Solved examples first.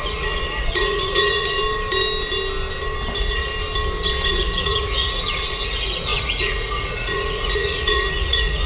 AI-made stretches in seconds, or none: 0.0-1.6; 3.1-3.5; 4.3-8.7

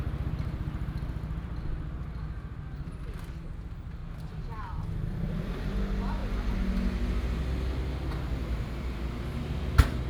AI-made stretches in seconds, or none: none

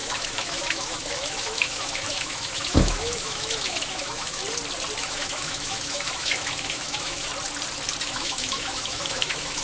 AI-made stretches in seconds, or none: 0.0-4.4; 5.0-7.3; 8.0-9.6

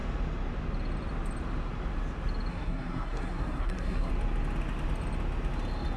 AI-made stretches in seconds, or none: 2.5-4.1

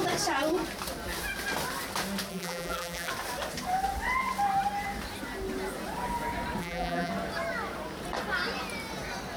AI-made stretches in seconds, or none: 2.3-3.1; 6.6-7.1

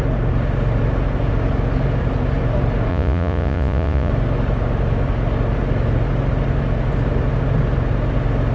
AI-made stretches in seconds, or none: 2.9-4.1